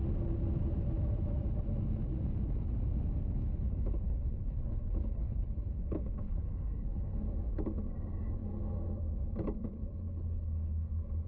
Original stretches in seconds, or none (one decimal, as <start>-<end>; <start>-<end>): 0.0-3.4; 7.2-9.6; 10.9-11.3